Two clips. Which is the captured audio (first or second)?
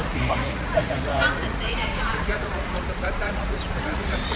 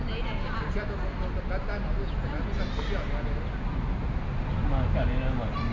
second